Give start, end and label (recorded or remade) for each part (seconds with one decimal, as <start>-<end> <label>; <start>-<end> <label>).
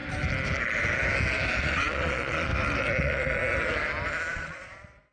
0.0-1.6 recorded; 1.6-2.5 remade; 2.5-3.0 recorded; 3.0-3.4 remade; 3.4-4.3 recorded; 4.3-5.1 remade